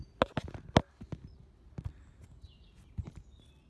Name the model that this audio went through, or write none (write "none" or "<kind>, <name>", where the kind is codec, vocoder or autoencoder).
none